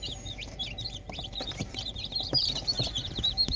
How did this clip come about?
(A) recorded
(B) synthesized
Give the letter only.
B